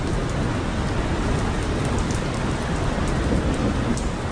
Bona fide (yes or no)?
yes